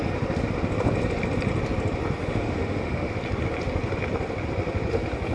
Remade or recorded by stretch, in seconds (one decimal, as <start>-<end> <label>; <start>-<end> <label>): 0.0-2.2 recorded; 2.2-3.1 remade; 3.1-5.3 recorded